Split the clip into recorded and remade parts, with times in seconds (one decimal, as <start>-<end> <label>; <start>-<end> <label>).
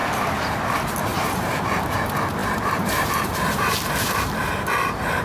0.0-0.5 remade; 0.5-1.1 recorded; 1.1-1.8 remade; 1.8-2.4 recorded; 2.4-4.5 remade; 4.5-5.2 recorded